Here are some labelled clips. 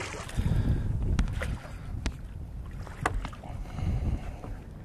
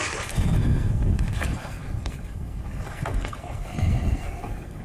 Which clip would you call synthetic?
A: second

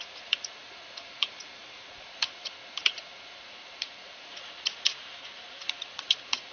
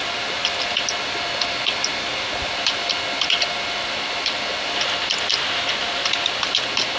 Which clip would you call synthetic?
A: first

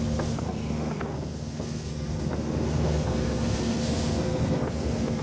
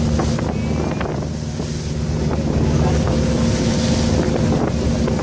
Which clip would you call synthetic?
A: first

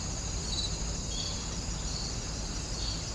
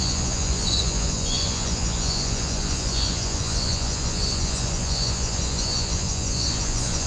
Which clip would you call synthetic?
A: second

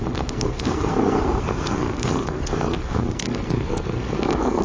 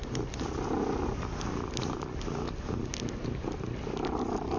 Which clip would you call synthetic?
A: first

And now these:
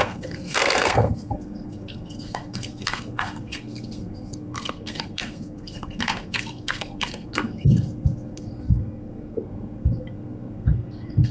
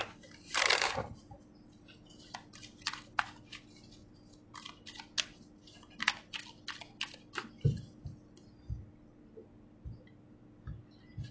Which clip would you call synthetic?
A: first